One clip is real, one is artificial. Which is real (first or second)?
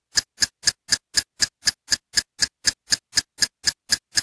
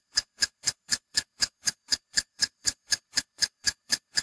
first